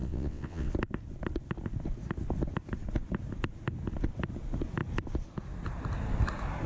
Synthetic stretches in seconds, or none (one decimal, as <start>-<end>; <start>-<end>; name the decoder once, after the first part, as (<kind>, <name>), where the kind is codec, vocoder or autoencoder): 0.0-0.7 (vocoder, WaveNeXt)